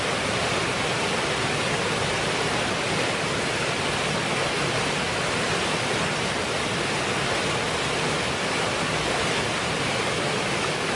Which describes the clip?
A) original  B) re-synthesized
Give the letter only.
A